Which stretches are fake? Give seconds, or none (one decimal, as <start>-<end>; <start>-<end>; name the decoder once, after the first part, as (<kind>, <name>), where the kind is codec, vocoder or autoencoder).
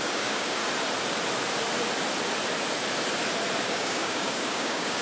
0.0-0.6 (codec, DAC); 3.6-5.0